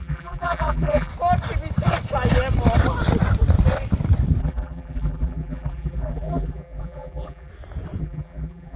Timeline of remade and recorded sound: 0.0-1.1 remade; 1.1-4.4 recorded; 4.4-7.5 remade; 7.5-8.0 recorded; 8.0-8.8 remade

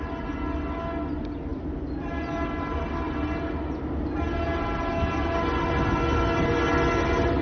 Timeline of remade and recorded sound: 0.0-7.4 recorded